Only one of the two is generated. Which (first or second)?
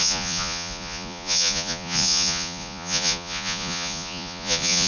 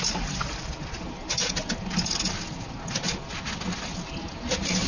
first